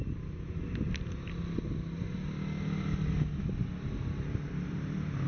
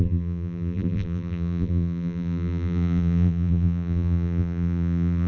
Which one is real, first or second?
first